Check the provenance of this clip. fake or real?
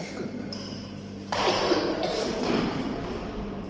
real